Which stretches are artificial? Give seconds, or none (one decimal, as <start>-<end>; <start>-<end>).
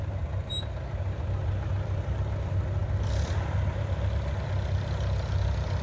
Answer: none